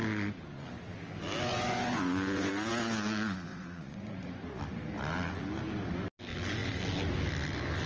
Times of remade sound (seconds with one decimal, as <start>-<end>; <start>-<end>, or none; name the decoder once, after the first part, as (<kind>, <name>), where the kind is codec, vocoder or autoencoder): 1.5-2.7 (vocoder, Vocos); 3.5-4.6